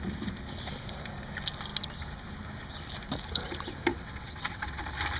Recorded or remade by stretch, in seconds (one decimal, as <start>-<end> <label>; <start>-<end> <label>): 0.0-3.9 recorded; 3.9-4.8 remade; 4.8-5.2 recorded